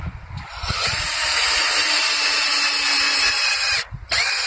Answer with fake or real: real